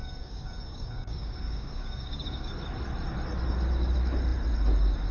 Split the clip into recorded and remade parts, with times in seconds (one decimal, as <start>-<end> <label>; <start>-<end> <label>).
0.0-2.5 remade; 2.5-5.1 recorded